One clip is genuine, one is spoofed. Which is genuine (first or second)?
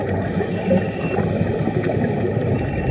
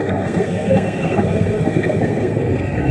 first